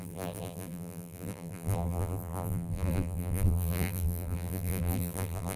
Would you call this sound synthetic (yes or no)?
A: yes